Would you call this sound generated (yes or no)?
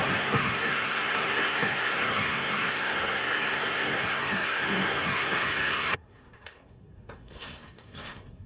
yes